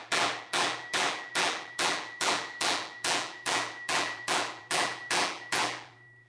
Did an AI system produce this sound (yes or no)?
yes